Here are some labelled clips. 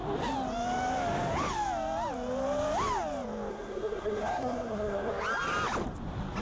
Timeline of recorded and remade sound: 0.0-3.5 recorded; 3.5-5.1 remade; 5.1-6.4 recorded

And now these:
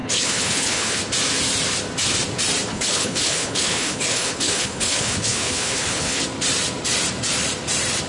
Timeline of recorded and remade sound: 0.0-1.0 remade; 1.0-2.7 recorded; 2.7-6.2 remade; 6.2-8.1 recorded